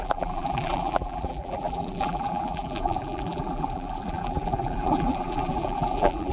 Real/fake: fake